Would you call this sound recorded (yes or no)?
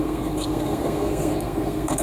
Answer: no